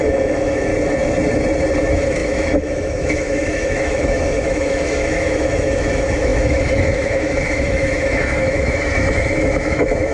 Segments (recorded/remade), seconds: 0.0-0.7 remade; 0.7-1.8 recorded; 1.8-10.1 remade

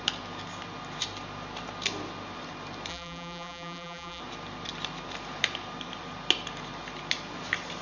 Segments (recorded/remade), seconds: 0.0-2.9 recorded; 2.9-4.2 remade; 4.2-7.8 recorded